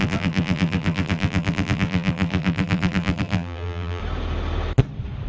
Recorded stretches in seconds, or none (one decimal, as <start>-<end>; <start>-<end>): 4.0-5.3